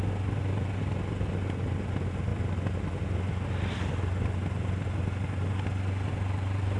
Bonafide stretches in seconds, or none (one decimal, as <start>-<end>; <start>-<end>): 0.0-6.8